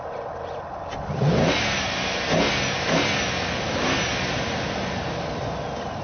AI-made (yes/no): no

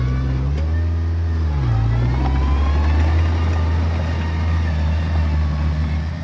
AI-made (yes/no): no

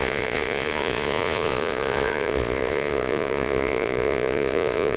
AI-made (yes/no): yes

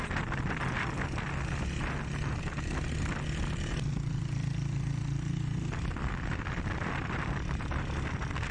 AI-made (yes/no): no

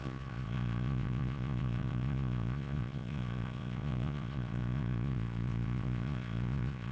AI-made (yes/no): yes